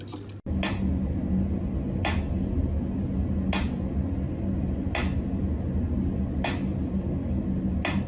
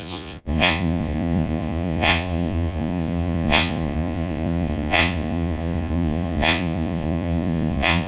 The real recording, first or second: first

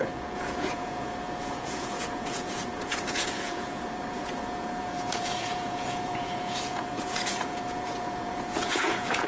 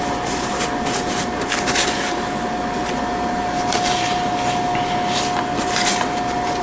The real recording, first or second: second